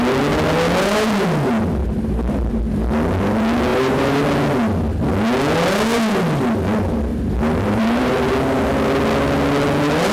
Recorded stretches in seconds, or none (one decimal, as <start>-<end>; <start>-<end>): 0.0-1.8; 2.6-3.7; 4.2-7.1; 8.3-10.1